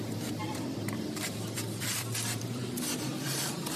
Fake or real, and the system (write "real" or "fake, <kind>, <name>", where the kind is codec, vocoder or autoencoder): fake, vocoder, BigVGAN v2